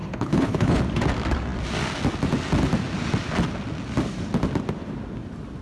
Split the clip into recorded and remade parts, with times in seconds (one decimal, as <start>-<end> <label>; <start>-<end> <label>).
0.0-0.8 remade; 0.8-5.6 recorded